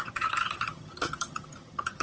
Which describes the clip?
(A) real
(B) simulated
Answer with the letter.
B